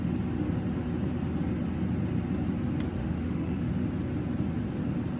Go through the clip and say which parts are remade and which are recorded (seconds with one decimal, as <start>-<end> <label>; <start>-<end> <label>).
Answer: 0.0-3.0 recorded; 3.0-3.7 remade; 3.7-5.2 recorded